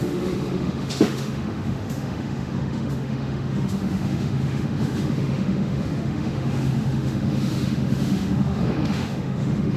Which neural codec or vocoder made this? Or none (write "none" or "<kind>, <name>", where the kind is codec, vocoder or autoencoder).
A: autoencoder, DAC-VAE